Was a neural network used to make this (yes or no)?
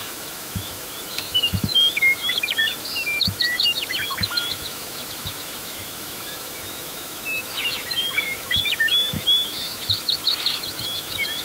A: yes